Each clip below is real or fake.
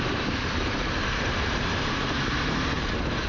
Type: fake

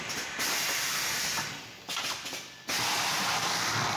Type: real